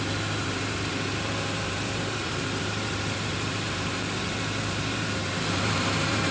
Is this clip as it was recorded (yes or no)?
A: no